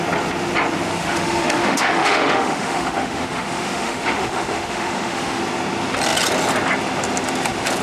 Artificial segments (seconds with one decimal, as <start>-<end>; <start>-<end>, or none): 1.0-5.4